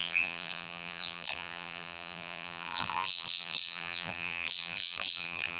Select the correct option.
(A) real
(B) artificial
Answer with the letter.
B